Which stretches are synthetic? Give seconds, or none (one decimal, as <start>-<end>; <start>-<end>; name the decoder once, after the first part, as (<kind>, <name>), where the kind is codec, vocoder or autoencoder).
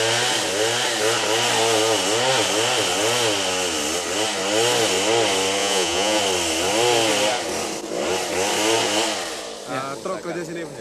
5.6-6.2 (vocoder, Vocos)